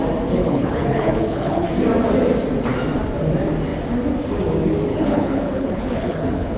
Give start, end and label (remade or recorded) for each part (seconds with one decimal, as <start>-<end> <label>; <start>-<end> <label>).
0.0-0.4 recorded; 0.4-1.7 remade; 1.7-4.9 recorded; 4.9-6.6 remade